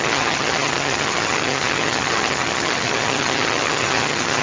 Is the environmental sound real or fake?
fake